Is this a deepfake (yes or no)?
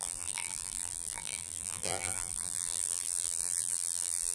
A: yes